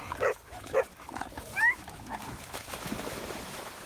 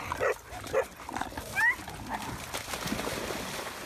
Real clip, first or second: second